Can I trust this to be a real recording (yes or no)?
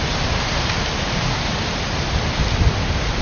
yes